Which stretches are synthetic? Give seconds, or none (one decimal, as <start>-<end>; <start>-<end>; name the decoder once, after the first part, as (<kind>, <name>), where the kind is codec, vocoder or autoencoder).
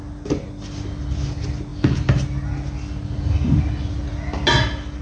none